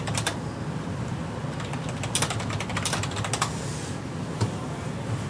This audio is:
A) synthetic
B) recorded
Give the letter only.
B